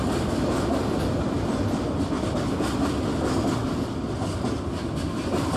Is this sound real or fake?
real